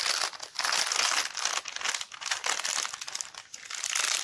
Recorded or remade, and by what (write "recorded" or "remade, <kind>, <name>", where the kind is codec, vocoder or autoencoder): recorded